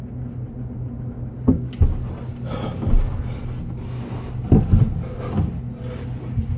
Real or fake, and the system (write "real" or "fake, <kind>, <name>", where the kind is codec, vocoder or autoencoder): real